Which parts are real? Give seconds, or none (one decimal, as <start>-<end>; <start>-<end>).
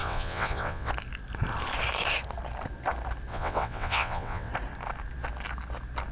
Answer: 0.9-3.3; 4.5-6.1